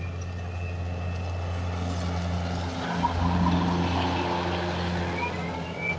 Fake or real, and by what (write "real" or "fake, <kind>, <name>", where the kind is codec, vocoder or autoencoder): real